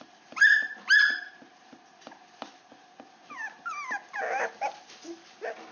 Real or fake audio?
real